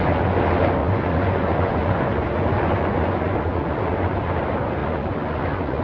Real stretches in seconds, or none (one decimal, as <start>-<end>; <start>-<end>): 0.0-0.8; 4.3-4.8